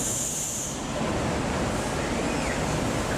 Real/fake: real